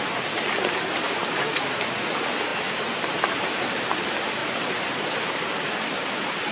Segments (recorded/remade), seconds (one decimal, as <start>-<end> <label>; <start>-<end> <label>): 0.0-4.4 recorded; 4.4-4.9 remade; 4.9-6.5 recorded